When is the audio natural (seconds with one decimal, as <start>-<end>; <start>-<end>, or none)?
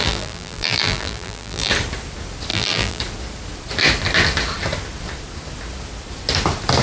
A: 1.7-2.5; 3.0-6.8